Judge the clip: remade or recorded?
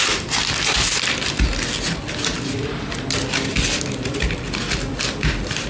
recorded